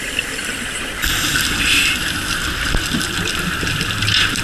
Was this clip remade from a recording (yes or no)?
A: no